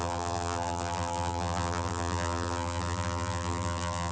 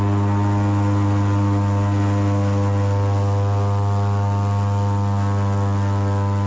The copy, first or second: first